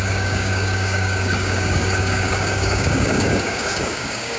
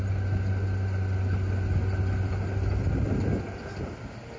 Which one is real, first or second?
second